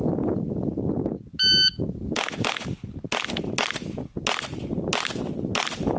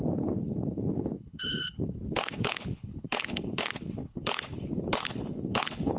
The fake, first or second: second